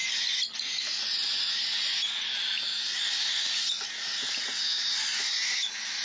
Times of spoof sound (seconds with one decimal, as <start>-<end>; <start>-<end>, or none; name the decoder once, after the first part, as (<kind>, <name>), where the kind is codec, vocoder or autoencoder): none